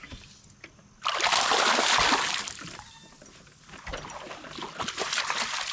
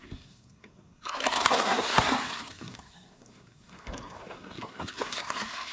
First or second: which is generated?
second